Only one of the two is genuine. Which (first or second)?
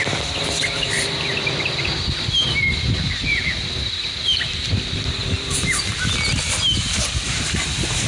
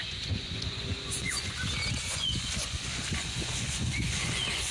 first